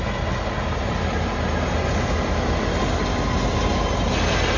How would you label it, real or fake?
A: real